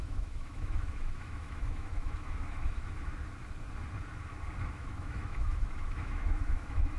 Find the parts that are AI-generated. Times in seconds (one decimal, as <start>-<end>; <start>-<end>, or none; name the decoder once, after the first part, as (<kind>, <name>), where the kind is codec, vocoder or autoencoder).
0.0-3.1 (autoencoder, DAC-VAE); 4.7-7.0